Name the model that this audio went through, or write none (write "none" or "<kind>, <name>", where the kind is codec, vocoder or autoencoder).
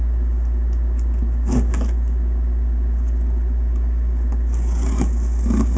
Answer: none